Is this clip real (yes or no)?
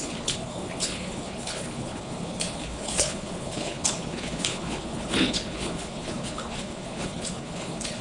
no